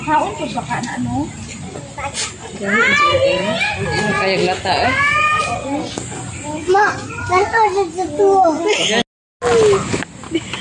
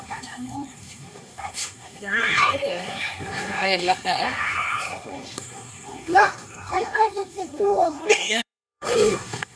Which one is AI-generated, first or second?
second